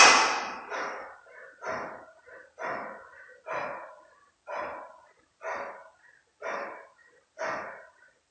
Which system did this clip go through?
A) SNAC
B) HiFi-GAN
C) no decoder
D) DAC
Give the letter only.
C